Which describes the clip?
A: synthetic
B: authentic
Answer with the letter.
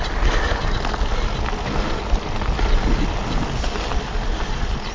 B